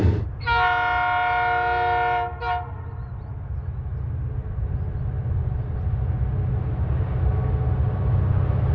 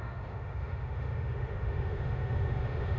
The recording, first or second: first